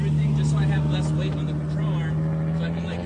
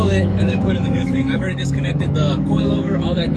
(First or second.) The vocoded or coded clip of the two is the second